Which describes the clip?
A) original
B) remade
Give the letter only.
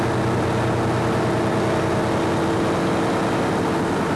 A